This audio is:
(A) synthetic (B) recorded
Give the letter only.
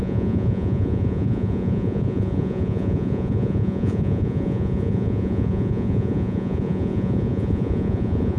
A